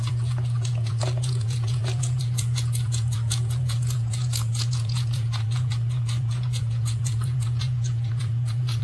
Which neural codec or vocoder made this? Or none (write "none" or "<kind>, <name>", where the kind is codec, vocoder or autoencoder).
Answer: vocoder, Vocos